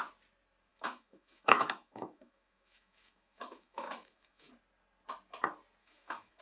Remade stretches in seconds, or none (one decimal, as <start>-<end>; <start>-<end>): 0.7-4.5; 5.8-6.4